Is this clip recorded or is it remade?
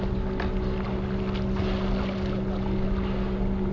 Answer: recorded